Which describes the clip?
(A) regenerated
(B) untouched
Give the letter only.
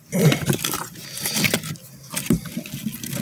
B